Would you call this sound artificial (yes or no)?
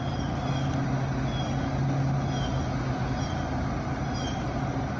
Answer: no